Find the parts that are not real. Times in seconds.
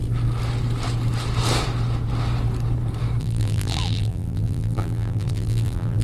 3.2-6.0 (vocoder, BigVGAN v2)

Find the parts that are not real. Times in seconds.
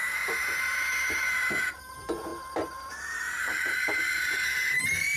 2.3-4.8 (vocoder, BigVGAN v2)